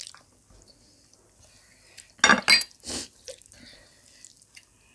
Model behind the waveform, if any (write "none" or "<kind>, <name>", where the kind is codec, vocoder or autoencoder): none